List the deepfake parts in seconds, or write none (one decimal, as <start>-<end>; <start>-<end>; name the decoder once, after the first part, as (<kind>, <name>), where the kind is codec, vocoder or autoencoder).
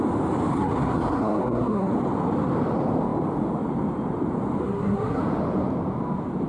0.5-1.9 (codec, SNAC); 4.6-5.2